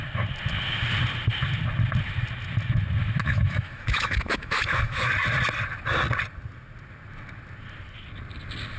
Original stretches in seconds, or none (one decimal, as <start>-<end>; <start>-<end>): 0.0-3.2; 5.1-8.8